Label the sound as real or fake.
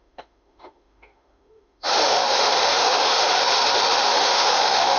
fake